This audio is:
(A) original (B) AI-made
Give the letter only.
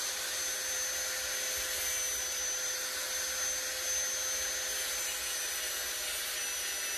A